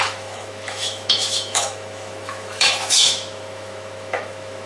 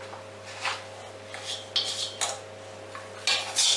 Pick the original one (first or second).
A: second